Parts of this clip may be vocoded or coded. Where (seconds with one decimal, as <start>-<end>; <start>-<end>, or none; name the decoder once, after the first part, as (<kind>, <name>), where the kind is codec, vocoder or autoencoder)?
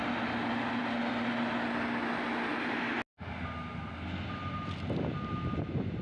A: none